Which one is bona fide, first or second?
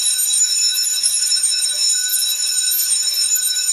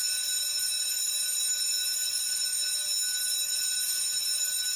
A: second